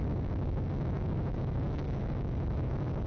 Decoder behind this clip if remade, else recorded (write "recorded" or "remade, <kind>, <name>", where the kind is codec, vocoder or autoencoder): remade, codec, DAC